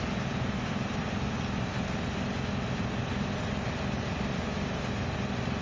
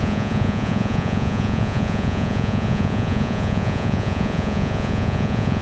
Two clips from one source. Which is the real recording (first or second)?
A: first